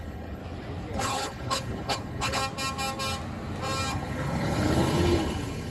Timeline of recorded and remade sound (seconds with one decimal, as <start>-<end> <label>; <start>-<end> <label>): 0.0-0.4 remade; 0.4-0.9 recorded; 0.9-2.4 remade; 2.4-3.9 recorded; 3.9-5.7 remade

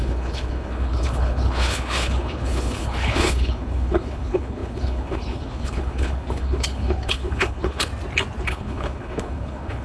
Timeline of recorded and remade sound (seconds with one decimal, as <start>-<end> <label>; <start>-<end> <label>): 0.0-7.9 remade; 7.9-8.5 recorded; 8.5-9.8 remade

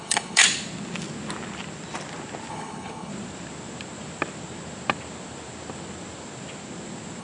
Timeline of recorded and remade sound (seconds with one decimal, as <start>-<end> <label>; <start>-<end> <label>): 0.0-0.4 remade; 0.4-2.5 recorded; 2.5-3.1 remade; 3.1-7.2 recorded